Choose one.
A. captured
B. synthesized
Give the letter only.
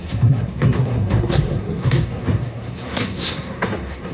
B